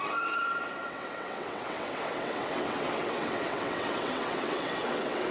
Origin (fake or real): fake